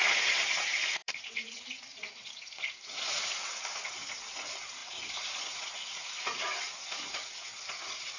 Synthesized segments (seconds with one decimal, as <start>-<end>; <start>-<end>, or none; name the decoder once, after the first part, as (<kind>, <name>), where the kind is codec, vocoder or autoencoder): 0.0-8.2 (vocoder, Vocos)